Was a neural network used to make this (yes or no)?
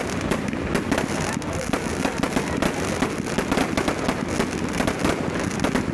no